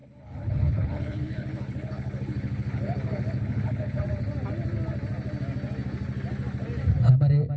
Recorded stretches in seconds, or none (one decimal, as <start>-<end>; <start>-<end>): 4.0-7.6